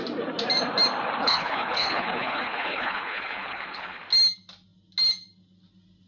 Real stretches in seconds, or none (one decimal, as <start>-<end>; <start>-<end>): 0.0-1.2; 4.0-6.1